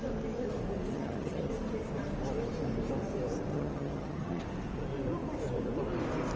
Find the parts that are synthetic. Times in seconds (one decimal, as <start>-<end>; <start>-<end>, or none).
0.9-1.5; 3.5-4.4